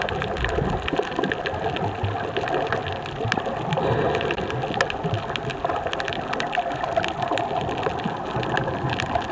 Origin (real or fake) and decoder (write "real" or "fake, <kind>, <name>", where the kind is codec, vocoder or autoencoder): real